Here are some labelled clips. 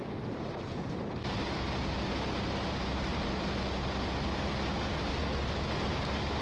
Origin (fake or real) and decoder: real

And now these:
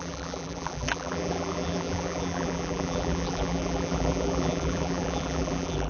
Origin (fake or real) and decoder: fake, vocoder, BigVGAN v2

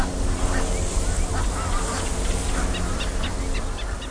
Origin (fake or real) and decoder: real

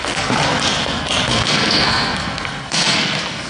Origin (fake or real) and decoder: fake, codec, SNAC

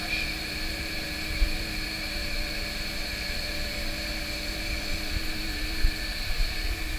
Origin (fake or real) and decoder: fake, vocoder, BigVGAN v2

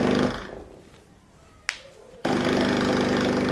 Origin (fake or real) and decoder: real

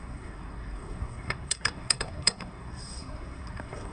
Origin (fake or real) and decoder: fake, codec, SNAC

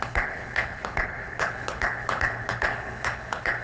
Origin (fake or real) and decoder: fake, codec, HILCodec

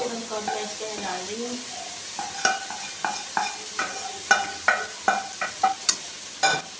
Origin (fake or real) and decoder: real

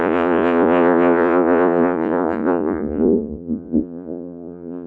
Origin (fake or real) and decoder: fake, vocoder, Vocos